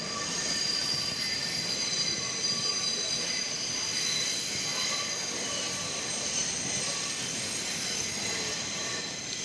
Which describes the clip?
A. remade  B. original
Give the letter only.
B